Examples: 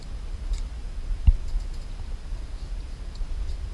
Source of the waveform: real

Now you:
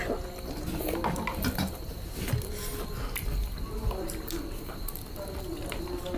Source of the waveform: real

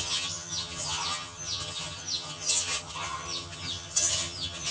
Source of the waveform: fake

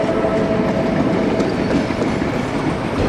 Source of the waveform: real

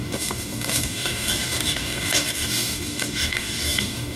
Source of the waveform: fake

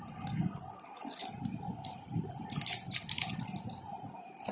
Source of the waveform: real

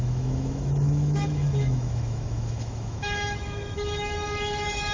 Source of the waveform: fake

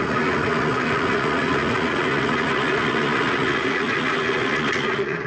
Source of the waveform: fake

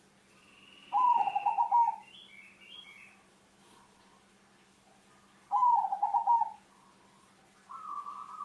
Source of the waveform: real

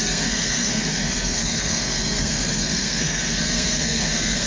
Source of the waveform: fake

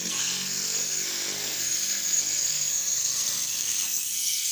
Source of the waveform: fake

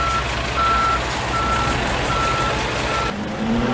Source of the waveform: real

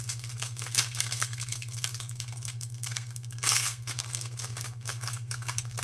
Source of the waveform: fake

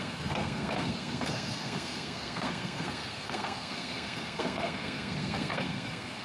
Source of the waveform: fake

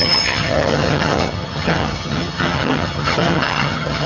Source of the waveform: fake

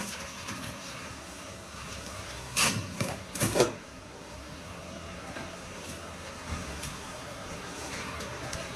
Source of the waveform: fake